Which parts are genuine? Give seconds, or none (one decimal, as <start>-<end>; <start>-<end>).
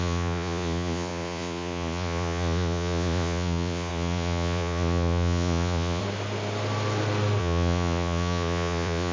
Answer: 6.0-7.4